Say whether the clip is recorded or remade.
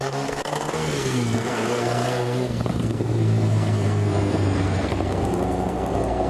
remade